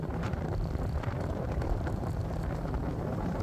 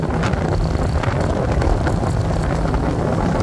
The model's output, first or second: first